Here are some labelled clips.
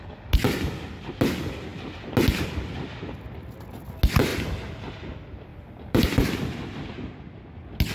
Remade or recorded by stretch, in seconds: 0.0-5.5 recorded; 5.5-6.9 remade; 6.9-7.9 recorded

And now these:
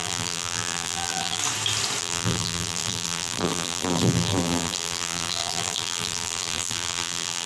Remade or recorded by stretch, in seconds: 0.0-1.4 remade; 1.4-2.0 recorded; 2.0-7.5 remade

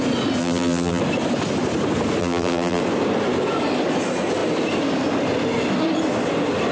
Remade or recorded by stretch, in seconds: 0.0-0.4 recorded; 0.4-1.0 remade; 1.0-2.2 recorded; 2.2-2.8 remade; 2.8-6.7 recorded